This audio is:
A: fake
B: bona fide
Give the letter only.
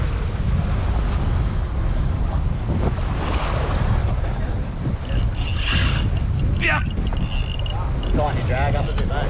B